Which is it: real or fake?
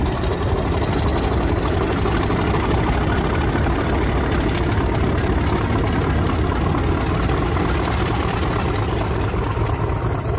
real